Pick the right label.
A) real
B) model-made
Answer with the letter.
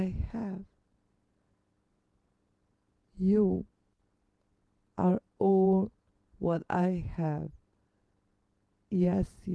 B